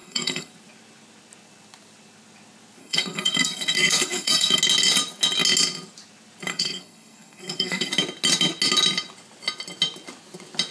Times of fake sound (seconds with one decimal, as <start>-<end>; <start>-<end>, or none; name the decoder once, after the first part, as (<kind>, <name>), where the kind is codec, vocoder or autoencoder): 0.0-0.5 (codec, SNAC); 2.8-4.6; 6.5-7.9